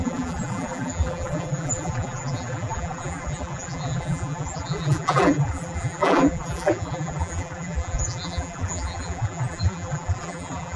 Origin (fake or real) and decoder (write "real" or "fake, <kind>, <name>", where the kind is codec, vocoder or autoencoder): fake, vocoder, BigVGAN v2